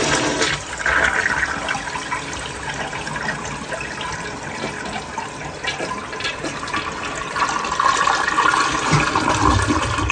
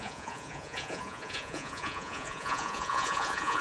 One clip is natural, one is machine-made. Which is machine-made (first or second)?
second